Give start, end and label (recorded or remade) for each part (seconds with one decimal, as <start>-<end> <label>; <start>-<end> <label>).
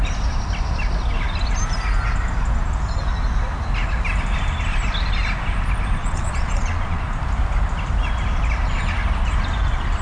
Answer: 0.0-6.0 recorded; 6.0-7.0 remade; 7.0-10.0 recorded